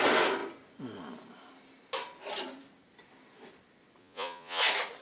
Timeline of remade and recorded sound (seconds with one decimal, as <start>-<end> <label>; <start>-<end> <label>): 0.0-4.0 recorded; 4.0-4.6 remade; 4.6-5.0 recorded